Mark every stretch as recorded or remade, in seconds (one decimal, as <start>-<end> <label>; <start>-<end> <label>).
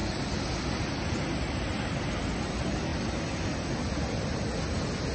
0.0-5.1 recorded